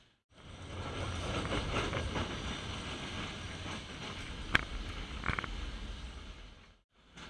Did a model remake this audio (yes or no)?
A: no